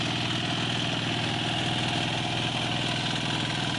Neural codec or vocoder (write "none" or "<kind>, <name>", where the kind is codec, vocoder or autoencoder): none